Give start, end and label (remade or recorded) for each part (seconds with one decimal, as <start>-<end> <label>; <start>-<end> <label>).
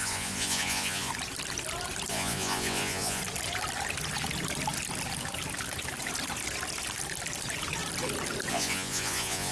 0.0-1.1 remade; 1.1-2.1 recorded; 2.1-3.2 remade; 3.2-8.5 recorded; 8.5-9.5 remade